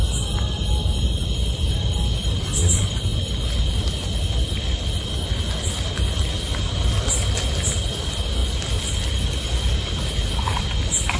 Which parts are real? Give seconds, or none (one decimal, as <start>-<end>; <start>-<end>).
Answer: 0.0-11.2